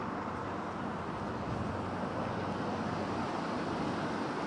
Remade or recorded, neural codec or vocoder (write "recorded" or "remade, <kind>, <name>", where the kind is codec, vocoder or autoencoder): recorded